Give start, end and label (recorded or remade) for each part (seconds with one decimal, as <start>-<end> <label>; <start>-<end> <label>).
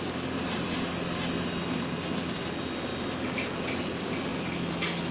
0.0-5.1 recorded